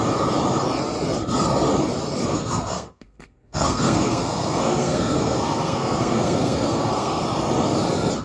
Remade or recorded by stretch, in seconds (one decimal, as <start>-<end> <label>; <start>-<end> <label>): 0.0-2.3 recorded; 2.3-7.2 remade; 7.2-8.2 recorded